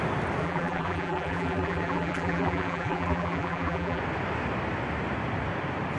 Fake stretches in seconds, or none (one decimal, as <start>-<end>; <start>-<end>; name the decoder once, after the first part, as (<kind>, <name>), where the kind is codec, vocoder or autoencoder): 0.4-4.0 (vocoder, BigVGAN v2)